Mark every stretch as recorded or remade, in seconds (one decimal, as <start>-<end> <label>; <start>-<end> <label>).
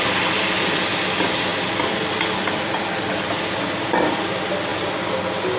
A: 0.0-5.6 recorded